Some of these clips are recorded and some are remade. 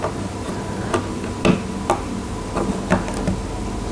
recorded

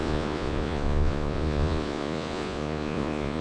remade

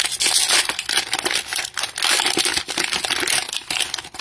recorded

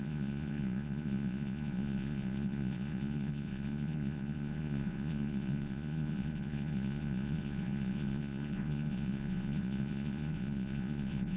remade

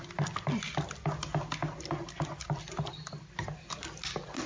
recorded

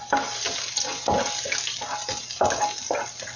recorded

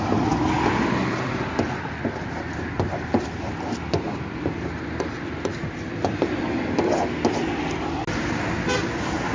recorded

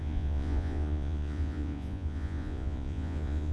remade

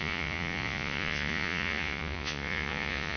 remade